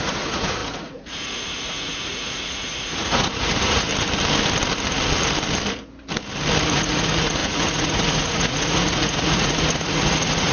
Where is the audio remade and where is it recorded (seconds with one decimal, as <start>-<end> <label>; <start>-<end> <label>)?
0.0-3.9 remade; 3.9-6.7 recorded; 6.7-10.5 remade